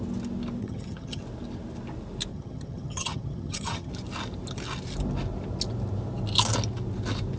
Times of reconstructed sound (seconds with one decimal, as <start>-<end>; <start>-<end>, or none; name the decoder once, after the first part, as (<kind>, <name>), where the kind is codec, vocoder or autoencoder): 0.6-1.2 (vocoder, HiFi-GAN); 2.3-3.9